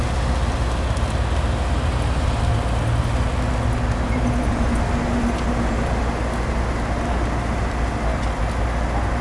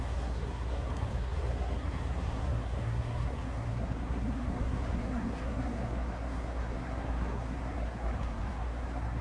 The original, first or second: first